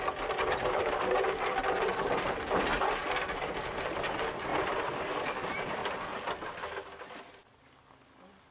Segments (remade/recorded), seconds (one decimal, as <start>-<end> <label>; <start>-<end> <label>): 0.0-1.9 recorded; 1.9-2.6 remade; 2.6-4.5 recorded; 4.5-5.2 remade; 5.2-5.8 recorded; 5.8-6.3 remade; 6.3-8.5 recorded